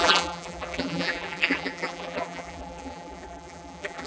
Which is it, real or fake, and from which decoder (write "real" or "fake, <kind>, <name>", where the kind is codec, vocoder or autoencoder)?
fake, vocoder, BigVGAN v2